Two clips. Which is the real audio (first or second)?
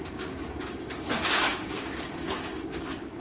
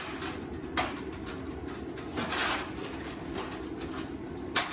second